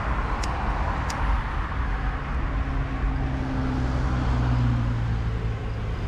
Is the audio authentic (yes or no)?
yes